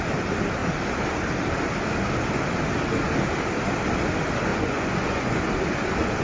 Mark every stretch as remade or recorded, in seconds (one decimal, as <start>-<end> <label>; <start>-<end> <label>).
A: 0.0-4.5 recorded; 4.5-5.5 remade; 5.5-6.2 recorded